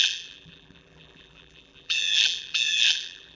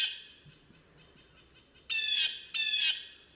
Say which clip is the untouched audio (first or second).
second